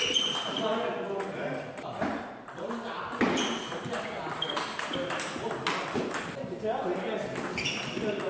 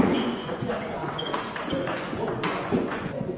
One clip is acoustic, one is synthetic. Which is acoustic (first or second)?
first